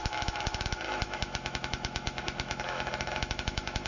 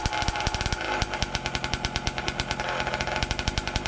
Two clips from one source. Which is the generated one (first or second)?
first